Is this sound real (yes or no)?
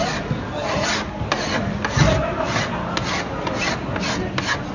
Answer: yes